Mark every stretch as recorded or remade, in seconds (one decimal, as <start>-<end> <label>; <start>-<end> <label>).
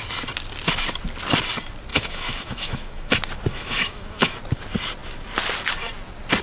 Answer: 0.0-1.9 recorded; 1.9-3.1 remade; 3.1-3.5 recorded; 3.5-4.4 remade; 4.4-6.4 recorded